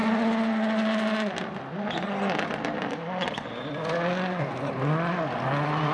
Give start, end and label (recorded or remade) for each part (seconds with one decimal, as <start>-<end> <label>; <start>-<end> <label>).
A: 0.0-5.9 recorded